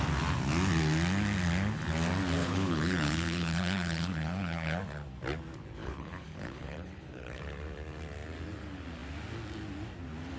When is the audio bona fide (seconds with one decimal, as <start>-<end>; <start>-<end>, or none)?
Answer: 0.0-2.4; 4.8-5.8; 7.4-10.4